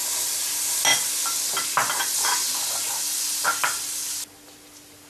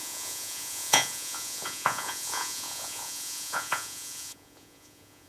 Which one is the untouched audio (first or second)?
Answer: first